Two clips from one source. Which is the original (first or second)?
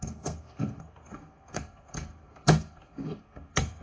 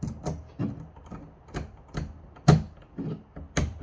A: second